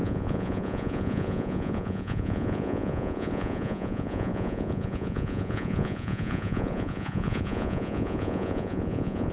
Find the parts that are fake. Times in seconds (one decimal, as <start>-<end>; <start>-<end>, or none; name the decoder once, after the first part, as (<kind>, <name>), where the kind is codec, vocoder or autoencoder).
0.0-9.3 (vocoder, Vocos)